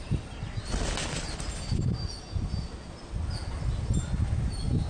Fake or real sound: real